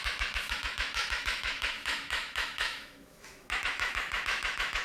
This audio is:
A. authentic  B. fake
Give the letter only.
B